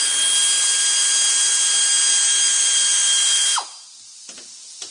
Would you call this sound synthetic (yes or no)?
no